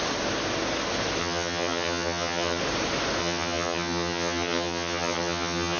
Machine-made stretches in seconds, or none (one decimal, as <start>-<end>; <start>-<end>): 1.2-2.6; 3.2-5.8